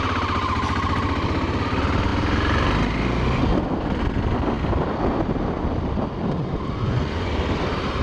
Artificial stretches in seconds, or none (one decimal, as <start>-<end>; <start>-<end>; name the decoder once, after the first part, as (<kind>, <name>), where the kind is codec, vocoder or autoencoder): 6.8-7.3 (vocoder, Vocos)